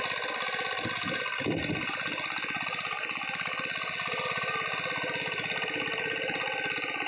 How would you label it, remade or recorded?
recorded